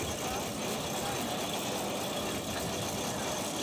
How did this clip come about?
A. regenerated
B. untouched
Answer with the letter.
B